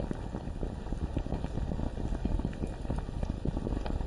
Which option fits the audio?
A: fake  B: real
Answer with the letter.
B